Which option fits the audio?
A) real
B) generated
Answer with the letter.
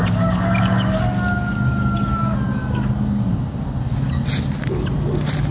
A